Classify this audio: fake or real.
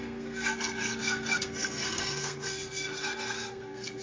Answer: fake